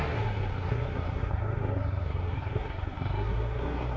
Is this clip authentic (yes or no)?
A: no